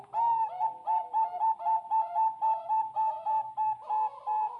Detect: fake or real real